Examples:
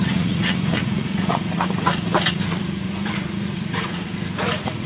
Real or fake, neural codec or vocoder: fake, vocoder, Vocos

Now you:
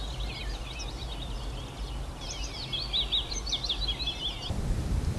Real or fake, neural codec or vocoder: real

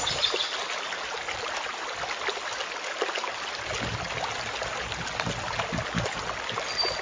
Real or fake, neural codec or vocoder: real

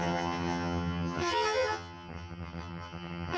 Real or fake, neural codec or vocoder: fake, vocoder, HiFi-GAN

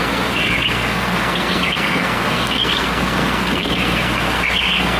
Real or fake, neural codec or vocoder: fake, codec, SNAC